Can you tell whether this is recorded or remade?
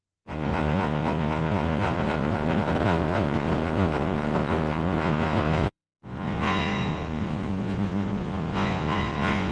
remade